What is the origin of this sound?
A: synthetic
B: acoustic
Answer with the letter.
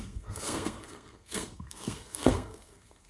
A